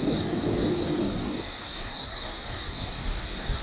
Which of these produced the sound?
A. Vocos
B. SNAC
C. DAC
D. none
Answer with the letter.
C